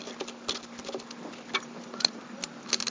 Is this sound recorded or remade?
recorded